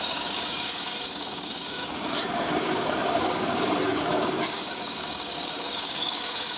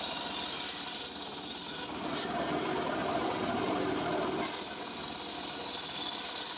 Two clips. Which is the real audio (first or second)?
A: second